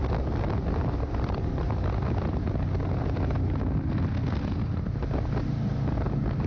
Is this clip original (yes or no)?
yes